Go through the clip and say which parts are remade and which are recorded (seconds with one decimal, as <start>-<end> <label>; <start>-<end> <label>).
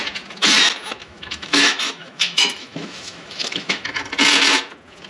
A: 0.0-1.0 recorded; 1.0-4.1 remade; 4.1-5.1 recorded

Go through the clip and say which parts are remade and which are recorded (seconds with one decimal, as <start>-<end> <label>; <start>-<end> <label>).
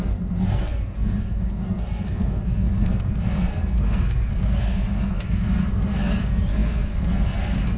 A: 0.0-7.8 remade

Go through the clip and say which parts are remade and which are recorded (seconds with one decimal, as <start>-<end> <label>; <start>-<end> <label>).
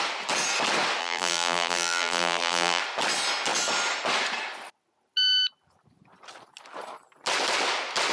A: 0.0-1.0 recorded; 1.0-2.8 remade; 2.8-8.1 recorded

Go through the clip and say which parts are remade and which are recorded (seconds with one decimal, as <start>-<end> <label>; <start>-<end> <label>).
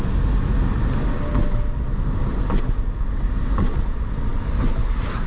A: 0.0-4.3 recorded; 4.3-5.3 remade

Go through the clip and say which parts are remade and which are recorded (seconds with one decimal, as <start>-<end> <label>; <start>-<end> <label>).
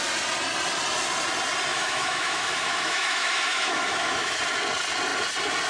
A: 0.0-1.7 recorded; 1.7-4.4 remade; 4.4-5.7 recorded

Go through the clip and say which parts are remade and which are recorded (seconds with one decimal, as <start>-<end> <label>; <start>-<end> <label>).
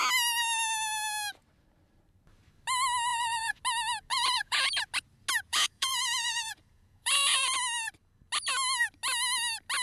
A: 0.0-3.1 recorded; 3.1-3.6 remade; 3.6-4.1 recorded; 4.1-4.7 remade; 4.7-5.5 recorded; 5.5-7.6 remade; 7.6-9.8 recorded